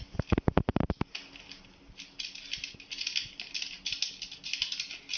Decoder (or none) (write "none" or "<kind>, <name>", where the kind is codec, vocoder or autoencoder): none